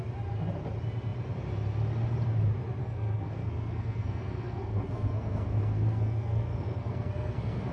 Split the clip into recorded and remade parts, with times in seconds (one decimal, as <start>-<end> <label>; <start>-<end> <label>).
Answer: 0.0-2.8 recorded; 2.8-7.7 remade